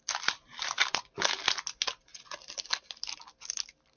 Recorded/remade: recorded